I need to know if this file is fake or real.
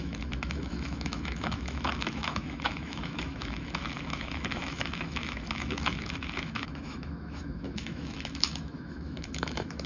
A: fake